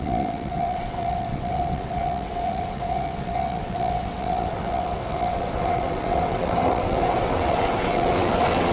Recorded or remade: remade